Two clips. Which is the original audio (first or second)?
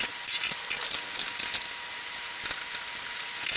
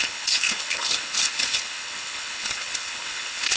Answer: first